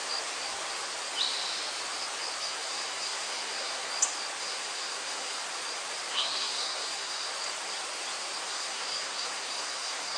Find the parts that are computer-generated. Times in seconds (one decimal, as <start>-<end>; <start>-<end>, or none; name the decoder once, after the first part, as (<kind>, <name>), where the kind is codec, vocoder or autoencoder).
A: 2.4-3.9 (codec, SNAC); 4.4-5.4; 6.1-7.3; 8.5-10.2